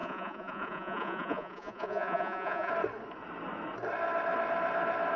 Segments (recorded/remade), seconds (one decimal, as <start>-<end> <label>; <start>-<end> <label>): 0.0-2.7 remade; 2.7-5.2 recorded